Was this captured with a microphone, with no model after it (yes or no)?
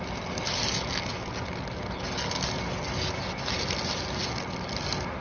yes